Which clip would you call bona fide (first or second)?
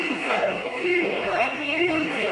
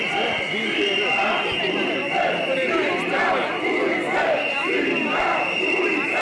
second